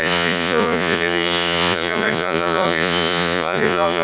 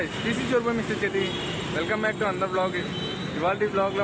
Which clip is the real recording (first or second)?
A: second